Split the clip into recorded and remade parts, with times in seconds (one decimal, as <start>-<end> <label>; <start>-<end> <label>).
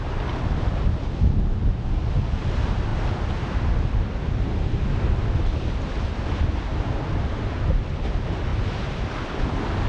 0.0-9.9 recorded